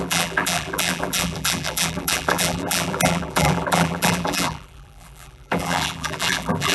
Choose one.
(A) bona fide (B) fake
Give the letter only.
B